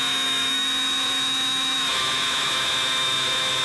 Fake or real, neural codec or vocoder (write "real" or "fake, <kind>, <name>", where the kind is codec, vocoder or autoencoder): fake, autoencoder, DAC-VAE